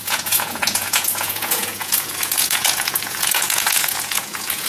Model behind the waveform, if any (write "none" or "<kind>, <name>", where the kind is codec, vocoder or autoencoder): vocoder, Vocos